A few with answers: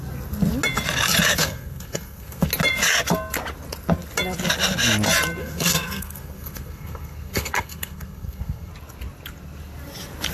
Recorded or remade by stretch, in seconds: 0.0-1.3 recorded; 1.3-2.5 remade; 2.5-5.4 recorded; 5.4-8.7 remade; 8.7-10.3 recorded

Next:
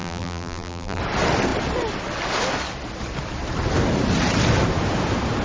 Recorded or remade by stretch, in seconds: 0.0-1.0 remade; 1.0-5.4 recorded

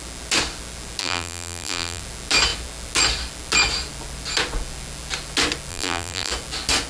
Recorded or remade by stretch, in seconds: 0.0-1.0 recorded; 1.0-2.0 remade; 2.0-5.7 recorded; 5.7-6.3 remade; 6.3-6.9 recorded

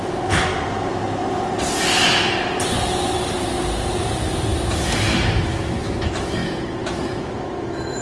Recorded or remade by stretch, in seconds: 0.0-0.5 remade; 0.5-5.3 recorded; 5.3-8.0 remade